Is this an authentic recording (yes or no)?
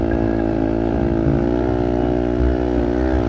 yes